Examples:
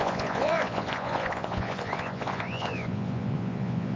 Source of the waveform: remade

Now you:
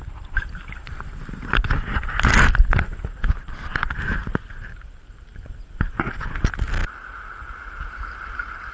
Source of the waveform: recorded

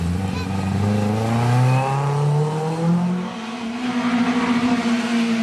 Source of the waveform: recorded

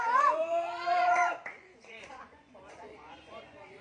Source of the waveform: remade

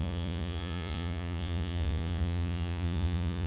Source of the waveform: remade